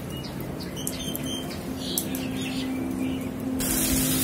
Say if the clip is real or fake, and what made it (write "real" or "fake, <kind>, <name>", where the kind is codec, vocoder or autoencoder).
real